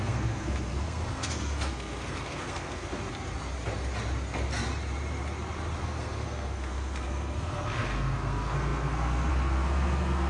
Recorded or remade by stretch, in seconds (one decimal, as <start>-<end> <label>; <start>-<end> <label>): 0.0-3.1 remade; 3.1-5.8 recorded; 5.8-10.3 remade